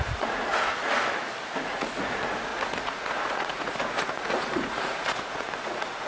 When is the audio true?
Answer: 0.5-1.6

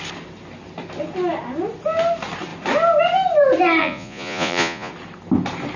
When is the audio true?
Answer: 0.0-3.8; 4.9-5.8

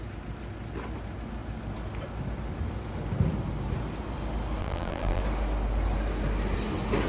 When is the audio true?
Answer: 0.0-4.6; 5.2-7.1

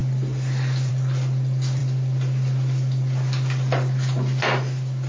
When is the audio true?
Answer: 0.0-5.1